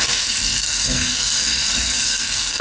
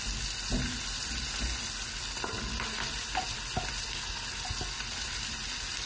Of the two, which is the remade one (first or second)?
first